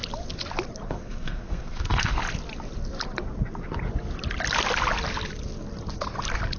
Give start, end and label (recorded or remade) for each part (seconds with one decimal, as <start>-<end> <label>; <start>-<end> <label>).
0.0-0.9 recorded; 0.9-2.2 remade; 2.2-6.6 recorded